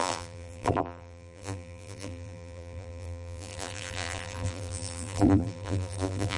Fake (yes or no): yes